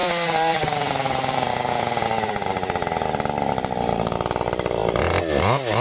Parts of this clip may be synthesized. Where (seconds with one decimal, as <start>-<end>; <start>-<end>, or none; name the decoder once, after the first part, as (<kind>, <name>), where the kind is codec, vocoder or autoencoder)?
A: 0.0-4.8 (vocoder, BigVGAN v2)